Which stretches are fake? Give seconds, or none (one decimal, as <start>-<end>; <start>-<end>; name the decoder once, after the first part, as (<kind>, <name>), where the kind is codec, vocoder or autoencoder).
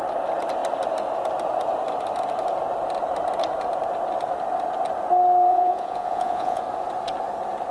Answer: 5.5-6.6 (vocoder, Vocos)